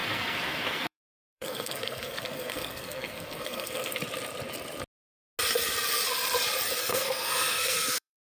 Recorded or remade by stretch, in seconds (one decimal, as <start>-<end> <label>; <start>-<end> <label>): 0.0-3.9 remade; 3.9-6.8 recorded; 6.8-8.2 remade